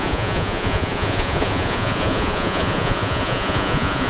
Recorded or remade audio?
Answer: remade